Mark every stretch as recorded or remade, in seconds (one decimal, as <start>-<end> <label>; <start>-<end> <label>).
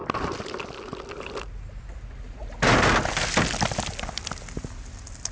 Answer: 0.0-5.3 recorded